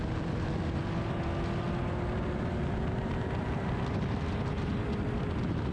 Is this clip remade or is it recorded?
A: recorded